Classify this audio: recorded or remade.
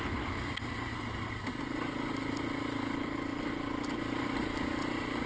recorded